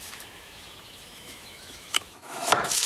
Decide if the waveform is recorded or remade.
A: remade